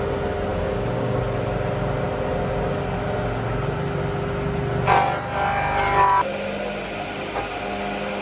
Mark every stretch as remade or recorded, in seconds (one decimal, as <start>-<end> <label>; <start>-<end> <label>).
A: 0.0-0.5 recorded; 0.5-1.2 remade; 1.2-8.2 recorded